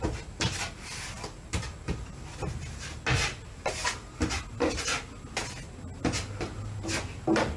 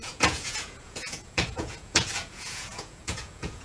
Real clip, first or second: first